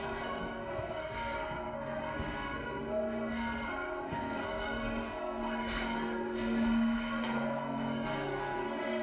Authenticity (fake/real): fake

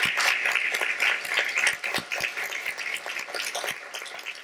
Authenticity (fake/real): real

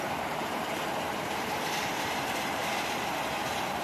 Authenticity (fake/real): fake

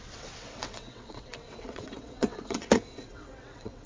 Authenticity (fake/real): fake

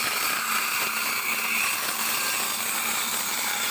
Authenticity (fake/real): real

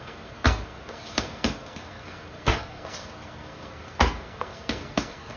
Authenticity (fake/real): fake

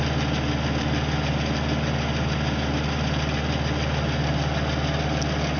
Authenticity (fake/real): real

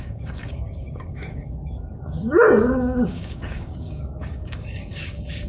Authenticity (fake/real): fake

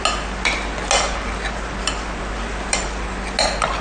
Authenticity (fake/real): real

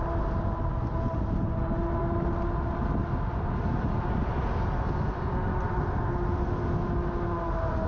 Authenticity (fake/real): real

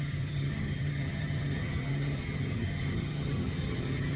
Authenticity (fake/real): fake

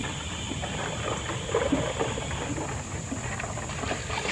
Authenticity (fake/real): real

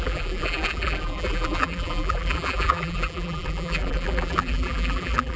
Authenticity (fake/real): fake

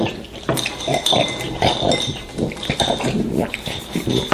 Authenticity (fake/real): real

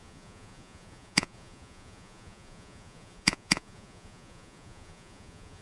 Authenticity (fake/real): fake